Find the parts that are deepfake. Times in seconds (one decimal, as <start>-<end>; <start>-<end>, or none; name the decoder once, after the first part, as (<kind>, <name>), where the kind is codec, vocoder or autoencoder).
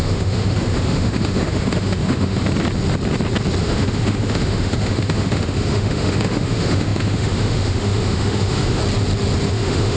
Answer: 0.0-2.4 (autoencoder, DAC-VAE); 3.6-8.8; 9.5-10.0